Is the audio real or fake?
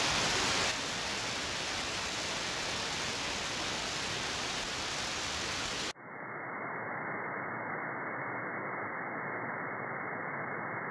real